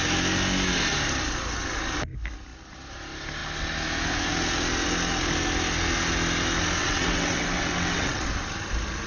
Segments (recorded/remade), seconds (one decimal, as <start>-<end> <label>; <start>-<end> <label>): 0.0-6.8 recorded; 6.8-8.2 remade; 8.2-9.1 recorded